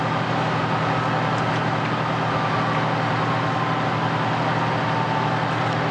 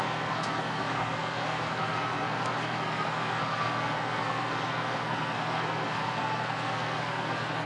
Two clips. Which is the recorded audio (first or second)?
first